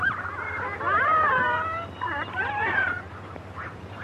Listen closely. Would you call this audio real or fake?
fake